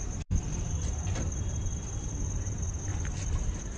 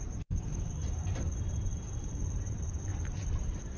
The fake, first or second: second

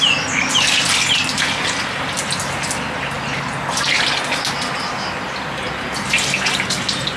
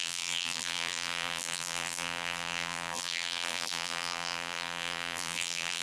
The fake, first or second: second